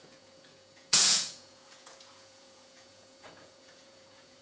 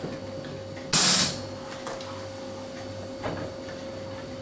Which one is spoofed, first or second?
first